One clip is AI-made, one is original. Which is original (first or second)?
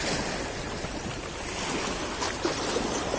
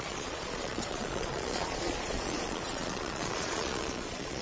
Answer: first